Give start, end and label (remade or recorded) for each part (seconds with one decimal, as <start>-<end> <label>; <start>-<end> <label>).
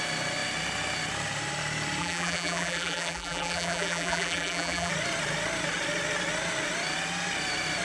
0.0-2.0 recorded; 2.0-4.9 remade; 4.9-7.8 recorded